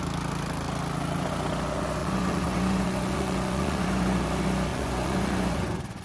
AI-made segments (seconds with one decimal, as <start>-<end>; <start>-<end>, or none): 2.0-4.2; 4.7-6.0